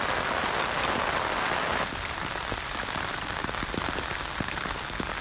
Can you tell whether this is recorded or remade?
recorded